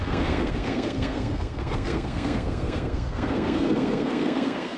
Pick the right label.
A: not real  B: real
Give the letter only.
A